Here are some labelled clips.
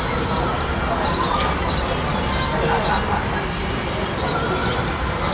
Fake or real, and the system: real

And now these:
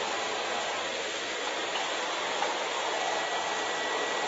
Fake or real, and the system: real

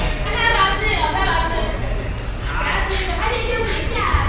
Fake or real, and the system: real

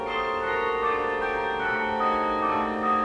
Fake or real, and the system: real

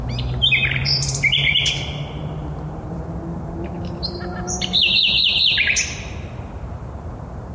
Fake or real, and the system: fake, vocoder, BigVGAN v2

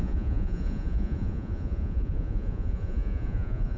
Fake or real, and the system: fake, vocoder, Vocos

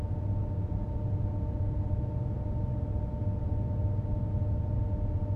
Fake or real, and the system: real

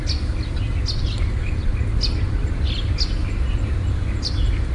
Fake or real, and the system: real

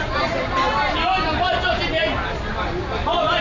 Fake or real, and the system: real